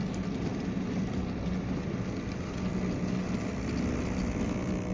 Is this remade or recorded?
recorded